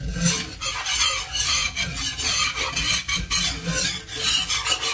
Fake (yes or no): no